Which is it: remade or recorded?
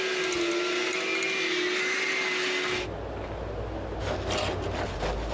recorded